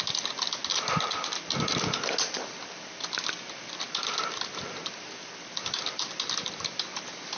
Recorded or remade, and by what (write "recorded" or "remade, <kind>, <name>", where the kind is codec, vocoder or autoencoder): recorded